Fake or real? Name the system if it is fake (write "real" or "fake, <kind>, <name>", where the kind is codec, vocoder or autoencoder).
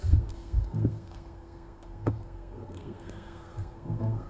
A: fake, codec, SNAC